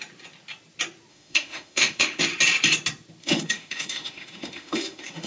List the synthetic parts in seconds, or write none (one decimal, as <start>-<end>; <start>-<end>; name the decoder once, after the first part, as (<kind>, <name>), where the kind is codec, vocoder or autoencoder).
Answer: 1.1-2.2 (autoencoder, DAC-VAE); 3.2-5.3